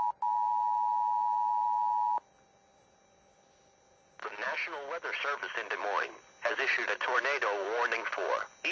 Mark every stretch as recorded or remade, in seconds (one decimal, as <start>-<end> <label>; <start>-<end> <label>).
0.0-8.7 recorded